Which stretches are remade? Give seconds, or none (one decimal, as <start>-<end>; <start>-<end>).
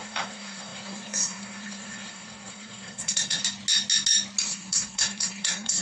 0.0-3.4; 4.4-5.8